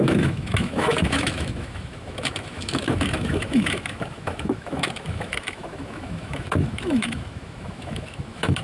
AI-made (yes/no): yes